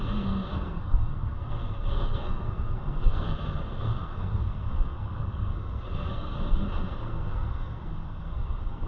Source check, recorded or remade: remade